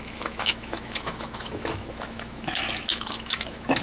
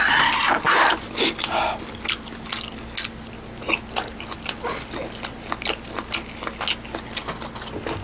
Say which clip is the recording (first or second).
second